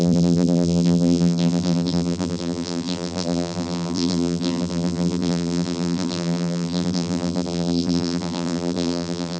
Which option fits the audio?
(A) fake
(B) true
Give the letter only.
A